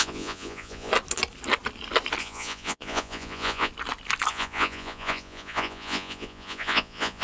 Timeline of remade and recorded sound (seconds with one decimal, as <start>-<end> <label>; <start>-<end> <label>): 0.0-0.9 remade; 0.9-2.2 recorded; 2.2-3.7 remade; 3.7-4.3 recorded; 4.3-7.2 remade